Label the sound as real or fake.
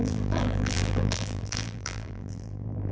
fake